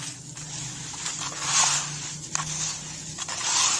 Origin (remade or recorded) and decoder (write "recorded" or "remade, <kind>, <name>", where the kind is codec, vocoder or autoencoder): recorded